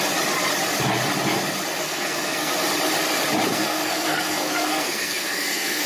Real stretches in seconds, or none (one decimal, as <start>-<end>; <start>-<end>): 0.0-1.8; 2.5-3.5

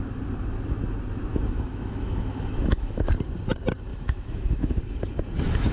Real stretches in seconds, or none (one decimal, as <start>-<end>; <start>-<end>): 0.0-1.3; 3.0-3.9; 4.8-5.7

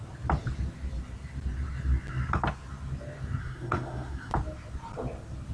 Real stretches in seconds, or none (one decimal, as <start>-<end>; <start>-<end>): 0.0-3.4; 4.3-5.5

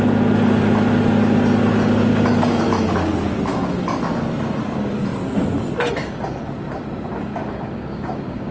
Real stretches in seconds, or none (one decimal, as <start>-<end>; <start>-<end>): 0.0-7.4